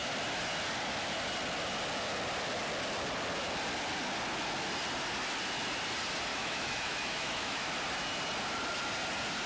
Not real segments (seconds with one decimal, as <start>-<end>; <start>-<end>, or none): 6.3-7.7